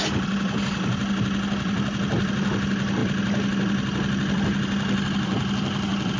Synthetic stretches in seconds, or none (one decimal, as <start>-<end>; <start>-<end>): none